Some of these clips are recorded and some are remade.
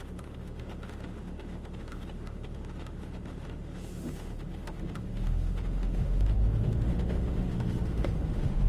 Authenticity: remade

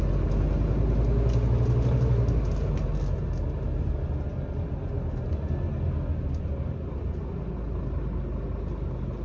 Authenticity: recorded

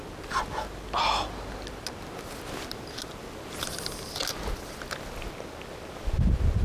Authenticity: recorded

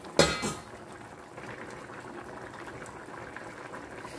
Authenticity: recorded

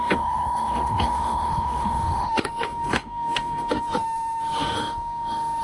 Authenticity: remade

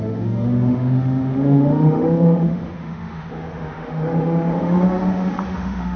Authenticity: remade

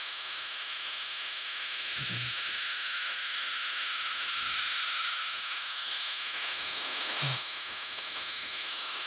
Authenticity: remade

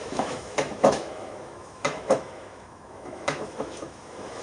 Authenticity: remade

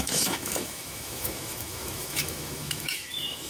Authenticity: remade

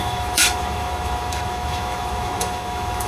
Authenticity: remade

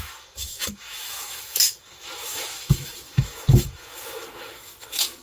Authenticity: remade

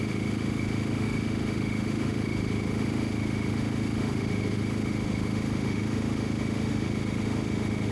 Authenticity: remade